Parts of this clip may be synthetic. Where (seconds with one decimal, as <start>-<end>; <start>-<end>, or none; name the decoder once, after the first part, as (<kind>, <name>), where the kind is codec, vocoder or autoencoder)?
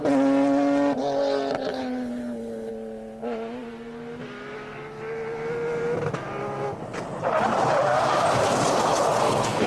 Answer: 1.7-2.7 (codec, HILCodec); 8.9-9.7